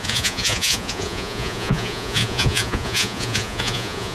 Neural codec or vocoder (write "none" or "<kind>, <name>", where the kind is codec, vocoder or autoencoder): vocoder, Vocos